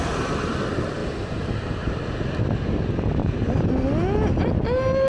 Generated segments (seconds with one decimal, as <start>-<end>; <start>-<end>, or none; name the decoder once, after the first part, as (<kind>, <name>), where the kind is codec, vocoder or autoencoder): 1.0-2.4 (vocoder, BigVGAN v2); 3.2-3.7